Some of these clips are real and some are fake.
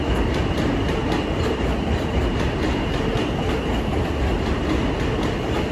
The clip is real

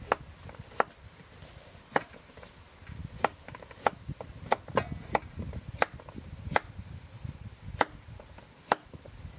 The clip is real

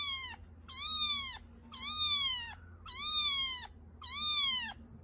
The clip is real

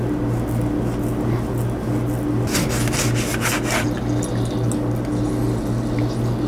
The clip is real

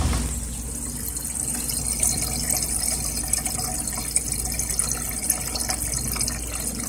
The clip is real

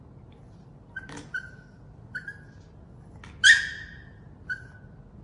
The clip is real